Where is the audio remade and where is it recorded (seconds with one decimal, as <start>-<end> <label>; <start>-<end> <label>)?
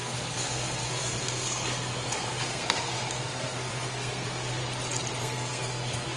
0.0-4.6 remade; 4.6-5.2 recorded; 5.2-6.2 remade